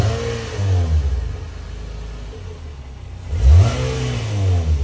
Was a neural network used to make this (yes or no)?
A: no